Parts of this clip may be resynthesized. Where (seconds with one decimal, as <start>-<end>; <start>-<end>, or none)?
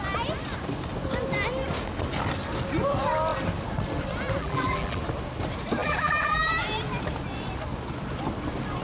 4.4-5.0; 5.8-6.5